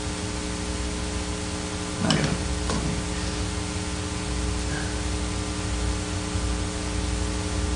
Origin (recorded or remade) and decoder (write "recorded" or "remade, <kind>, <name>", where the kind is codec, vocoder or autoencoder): recorded